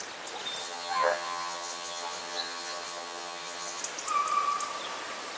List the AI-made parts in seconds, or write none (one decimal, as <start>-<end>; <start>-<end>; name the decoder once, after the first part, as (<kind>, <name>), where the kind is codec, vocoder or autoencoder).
0.6-3.8 (vocoder, HiFi-GAN)